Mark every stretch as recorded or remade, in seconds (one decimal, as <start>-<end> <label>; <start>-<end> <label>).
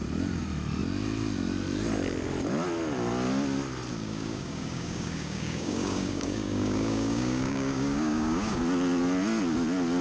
0.0-3.9 recorded; 3.9-8.6 remade; 8.6-10.0 recorded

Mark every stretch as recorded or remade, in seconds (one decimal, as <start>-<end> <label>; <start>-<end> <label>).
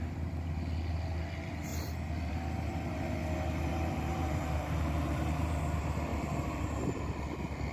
0.0-3.7 recorded; 3.7-5.6 remade; 5.6-6.1 recorded; 6.1-7.0 remade; 7.0-7.7 recorded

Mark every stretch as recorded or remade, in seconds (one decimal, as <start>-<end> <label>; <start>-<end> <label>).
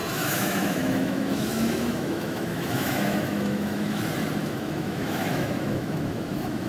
0.0-4.0 remade; 4.0-4.4 recorded; 4.4-6.7 remade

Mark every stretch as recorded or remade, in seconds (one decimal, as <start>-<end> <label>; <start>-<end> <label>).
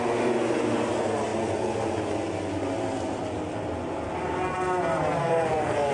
0.0-5.2 recorded; 5.2-5.9 remade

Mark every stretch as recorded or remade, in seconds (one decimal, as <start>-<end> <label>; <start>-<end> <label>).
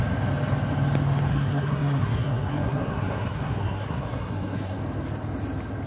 0.0-1.3 recorded; 1.3-4.8 remade; 4.8-5.9 recorded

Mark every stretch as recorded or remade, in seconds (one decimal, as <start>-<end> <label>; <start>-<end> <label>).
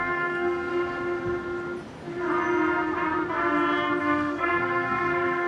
0.0-0.7 remade; 0.7-4.0 recorded; 4.0-5.5 remade